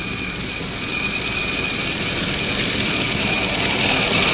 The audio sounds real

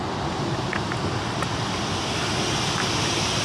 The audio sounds real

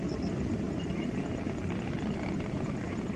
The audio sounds real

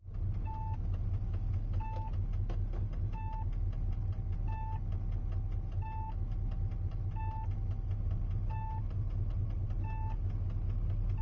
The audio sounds real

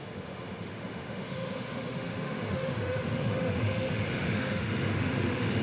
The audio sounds fake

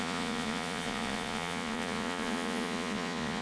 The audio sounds fake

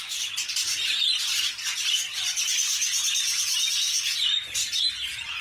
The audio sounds real